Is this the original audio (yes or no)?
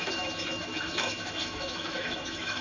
no